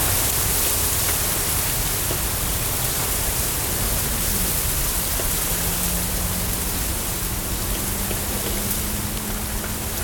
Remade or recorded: recorded